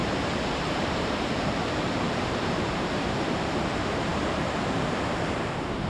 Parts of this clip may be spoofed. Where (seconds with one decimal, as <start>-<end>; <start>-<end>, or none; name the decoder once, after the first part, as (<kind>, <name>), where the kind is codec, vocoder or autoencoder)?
0.0-5.9 (vocoder, BigVGAN v2)